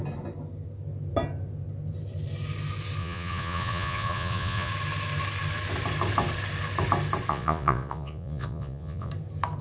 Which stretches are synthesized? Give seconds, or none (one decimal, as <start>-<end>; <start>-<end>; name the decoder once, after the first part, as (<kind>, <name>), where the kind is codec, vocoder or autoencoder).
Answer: 3.0-4.7 (vocoder, Vocos); 7.3-9.1